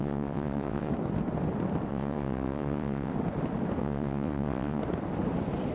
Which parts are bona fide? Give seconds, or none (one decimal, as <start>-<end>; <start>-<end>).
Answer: 0.9-1.9; 3.1-3.8; 4.8-5.7